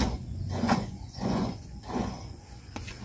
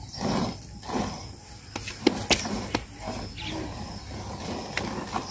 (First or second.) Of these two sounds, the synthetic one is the first